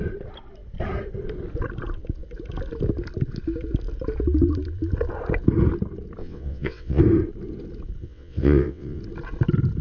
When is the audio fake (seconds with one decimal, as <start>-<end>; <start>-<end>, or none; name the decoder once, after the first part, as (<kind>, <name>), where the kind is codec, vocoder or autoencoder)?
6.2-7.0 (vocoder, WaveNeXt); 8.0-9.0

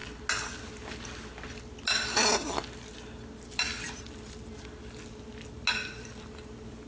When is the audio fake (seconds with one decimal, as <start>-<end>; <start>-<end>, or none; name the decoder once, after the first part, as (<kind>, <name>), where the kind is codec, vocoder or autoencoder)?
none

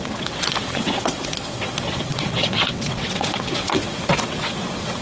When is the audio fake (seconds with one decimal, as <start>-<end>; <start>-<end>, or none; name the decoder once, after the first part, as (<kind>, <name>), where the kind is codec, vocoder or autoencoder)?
0.0-5.0 (vocoder, WaveNeXt)

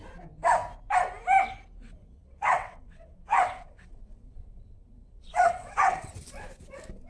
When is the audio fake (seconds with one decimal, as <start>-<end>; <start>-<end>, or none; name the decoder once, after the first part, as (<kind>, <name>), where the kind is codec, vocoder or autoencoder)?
1.8-6.1 (vocoder, WaveNeXt)

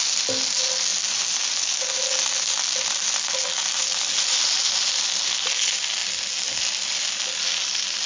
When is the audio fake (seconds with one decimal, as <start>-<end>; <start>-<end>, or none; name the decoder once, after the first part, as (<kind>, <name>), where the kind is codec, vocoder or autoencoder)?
none

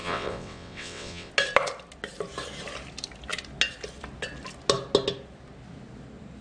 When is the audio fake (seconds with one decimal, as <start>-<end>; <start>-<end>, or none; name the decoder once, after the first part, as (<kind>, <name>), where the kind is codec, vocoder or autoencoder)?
0.0-1.3 (vocoder, WaveNeXt)

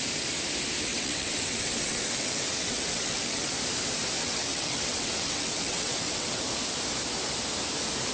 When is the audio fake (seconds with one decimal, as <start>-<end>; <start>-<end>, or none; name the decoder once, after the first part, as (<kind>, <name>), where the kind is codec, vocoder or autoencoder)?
0.9-3.5 (vocoder, WaveNeXt); 4.2-6.4